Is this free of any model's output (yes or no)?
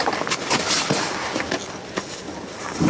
yes